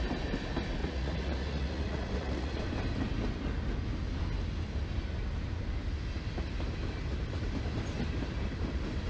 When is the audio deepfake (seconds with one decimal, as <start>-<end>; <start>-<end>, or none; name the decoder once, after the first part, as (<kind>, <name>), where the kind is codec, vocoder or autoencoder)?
0.8-2.6 (vocoder, Vocos)